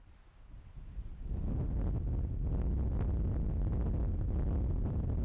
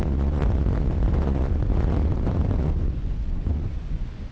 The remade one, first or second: second